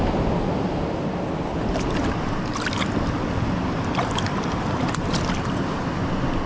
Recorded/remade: recorded